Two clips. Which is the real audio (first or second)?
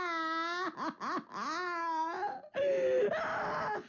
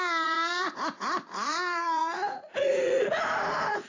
first